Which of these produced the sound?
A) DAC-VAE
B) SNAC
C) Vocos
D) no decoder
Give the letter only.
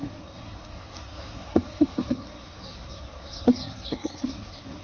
B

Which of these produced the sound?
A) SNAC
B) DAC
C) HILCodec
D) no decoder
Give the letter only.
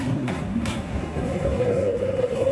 A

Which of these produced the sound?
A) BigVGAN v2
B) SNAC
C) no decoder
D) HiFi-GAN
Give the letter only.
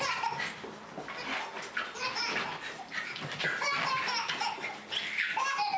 C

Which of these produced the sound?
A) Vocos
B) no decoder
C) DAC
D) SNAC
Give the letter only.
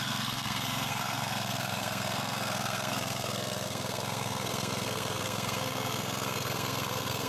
D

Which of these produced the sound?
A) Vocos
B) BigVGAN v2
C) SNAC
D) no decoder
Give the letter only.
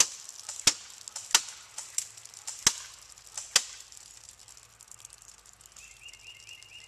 D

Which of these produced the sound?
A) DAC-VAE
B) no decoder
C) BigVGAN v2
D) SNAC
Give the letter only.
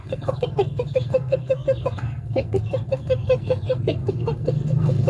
D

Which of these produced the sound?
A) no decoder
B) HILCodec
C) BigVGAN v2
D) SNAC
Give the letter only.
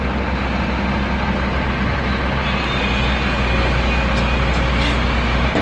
A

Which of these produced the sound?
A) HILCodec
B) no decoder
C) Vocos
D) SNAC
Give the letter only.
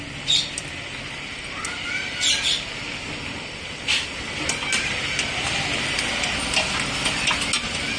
B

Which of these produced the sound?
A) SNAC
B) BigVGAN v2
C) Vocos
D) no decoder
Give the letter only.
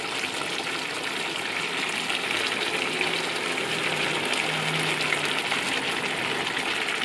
D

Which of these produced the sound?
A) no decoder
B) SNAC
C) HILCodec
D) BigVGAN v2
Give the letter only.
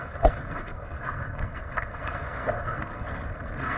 B